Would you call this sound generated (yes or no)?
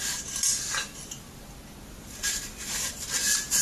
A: no